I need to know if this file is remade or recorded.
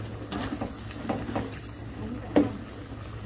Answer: recorded